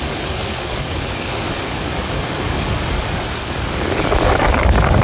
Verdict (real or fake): fake